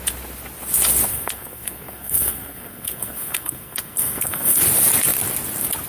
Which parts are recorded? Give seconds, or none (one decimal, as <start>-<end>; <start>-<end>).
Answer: 0.0-1.1; 4.6-5.9